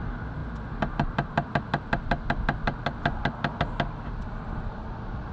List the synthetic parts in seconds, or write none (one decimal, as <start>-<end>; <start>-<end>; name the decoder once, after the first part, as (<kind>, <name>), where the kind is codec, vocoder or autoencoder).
none

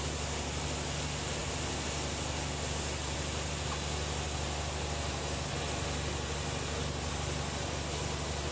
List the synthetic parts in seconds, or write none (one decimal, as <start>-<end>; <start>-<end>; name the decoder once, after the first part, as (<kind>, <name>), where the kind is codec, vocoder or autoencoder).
none

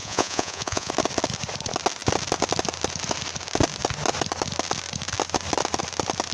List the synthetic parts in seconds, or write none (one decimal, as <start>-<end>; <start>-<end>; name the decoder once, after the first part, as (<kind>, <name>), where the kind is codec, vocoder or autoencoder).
0.0-0.9 (vocoder, Vocos)

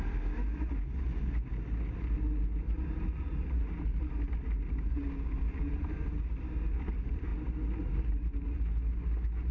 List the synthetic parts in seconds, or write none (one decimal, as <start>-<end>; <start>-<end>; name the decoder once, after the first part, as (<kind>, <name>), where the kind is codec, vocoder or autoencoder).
none